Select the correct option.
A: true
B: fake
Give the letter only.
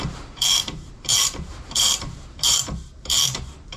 B